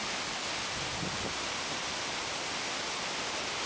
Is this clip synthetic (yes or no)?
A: no